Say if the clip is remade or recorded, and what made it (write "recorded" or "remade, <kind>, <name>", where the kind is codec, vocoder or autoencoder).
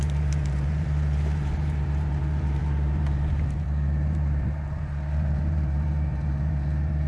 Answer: remade, vocoder, BigVGAN v2